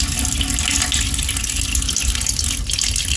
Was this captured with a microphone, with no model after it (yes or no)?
yes